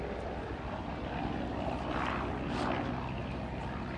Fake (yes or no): no